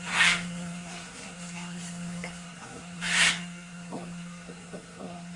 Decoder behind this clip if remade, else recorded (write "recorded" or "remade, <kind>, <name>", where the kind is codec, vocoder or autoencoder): remade, codec, SNAC